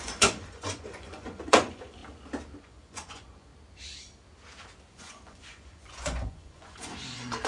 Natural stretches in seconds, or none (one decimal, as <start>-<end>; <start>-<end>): 2.0-2.6; 3.5-4.9